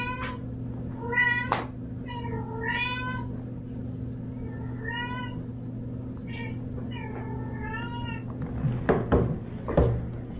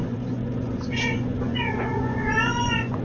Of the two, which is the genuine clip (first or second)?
first